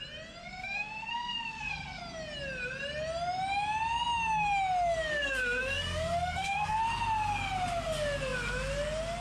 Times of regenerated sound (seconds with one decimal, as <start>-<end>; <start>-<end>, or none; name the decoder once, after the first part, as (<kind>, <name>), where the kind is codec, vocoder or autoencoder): 0.4-2.0 (codec, SNAC); 5.1-6.8

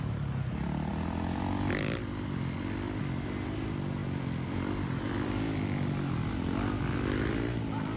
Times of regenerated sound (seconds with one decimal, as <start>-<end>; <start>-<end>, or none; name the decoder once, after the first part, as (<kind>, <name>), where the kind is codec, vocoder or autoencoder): 0.9-3.0 (vocoder, BigVGAN v2); 4.0-5.9

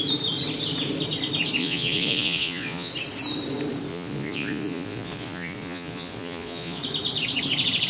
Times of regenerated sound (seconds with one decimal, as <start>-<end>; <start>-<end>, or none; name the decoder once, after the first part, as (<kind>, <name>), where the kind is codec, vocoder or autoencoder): 1.6-2.9 (vocoder, Vocos); 3.9-6.8

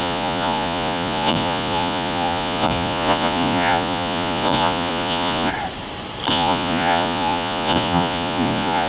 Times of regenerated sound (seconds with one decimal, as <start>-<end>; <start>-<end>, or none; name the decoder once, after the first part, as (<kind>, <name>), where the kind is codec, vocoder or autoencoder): 0.0-5.5 (vocoder, Vocos); 6.3-8.9

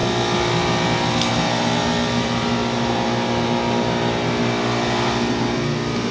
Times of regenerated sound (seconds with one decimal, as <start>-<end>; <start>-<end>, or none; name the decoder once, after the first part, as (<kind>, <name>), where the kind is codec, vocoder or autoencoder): none

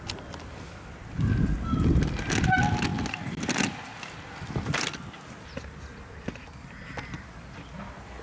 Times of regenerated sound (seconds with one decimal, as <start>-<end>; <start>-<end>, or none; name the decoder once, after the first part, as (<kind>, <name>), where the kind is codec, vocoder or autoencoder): none

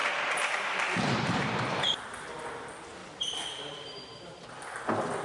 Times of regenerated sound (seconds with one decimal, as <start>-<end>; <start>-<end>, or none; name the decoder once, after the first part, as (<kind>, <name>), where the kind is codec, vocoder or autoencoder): 0.0-2.6 (vocoder, BigVGAN v2); 3.0-4.4

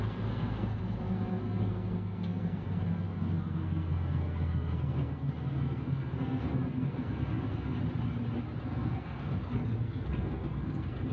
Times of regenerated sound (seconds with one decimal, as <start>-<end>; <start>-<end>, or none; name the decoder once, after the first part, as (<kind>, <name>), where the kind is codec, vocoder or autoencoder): 0.0-7.8 (codec, SNAC); 8.6-11.1